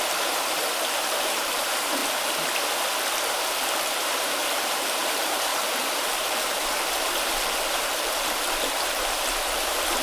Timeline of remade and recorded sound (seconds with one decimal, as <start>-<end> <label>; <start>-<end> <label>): 0.0-2.0 remade; 2.0-4.0 recorded; 4.0-10.0 remade